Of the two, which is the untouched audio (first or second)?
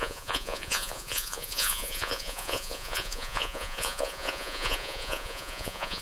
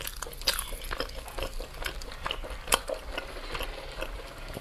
second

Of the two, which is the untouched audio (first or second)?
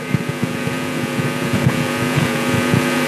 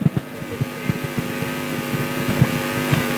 second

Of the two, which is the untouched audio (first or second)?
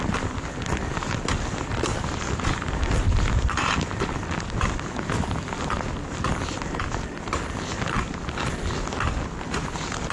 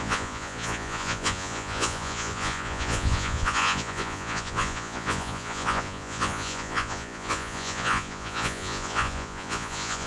first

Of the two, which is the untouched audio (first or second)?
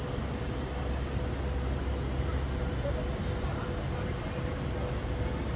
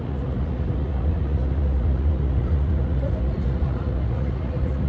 first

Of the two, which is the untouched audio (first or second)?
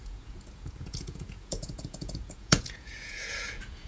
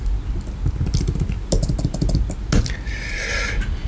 second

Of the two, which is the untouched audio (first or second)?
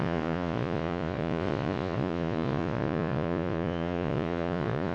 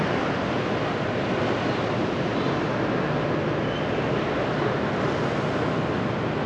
second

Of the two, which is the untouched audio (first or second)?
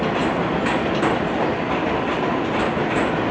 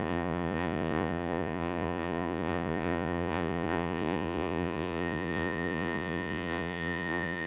first